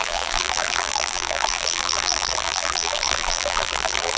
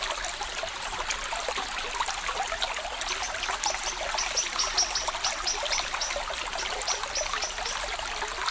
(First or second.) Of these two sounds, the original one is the second